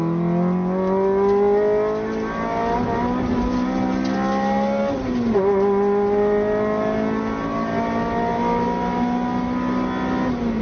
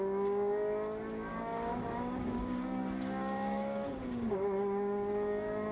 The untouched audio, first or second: first